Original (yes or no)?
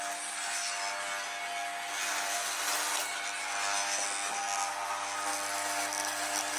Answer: yes